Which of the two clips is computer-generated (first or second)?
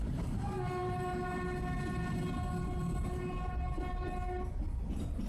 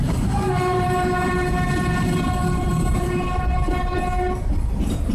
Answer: second